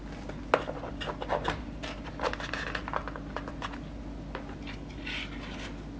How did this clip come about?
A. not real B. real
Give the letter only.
B